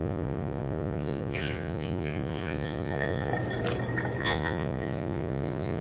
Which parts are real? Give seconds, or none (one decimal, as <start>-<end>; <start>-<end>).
3.3-4.2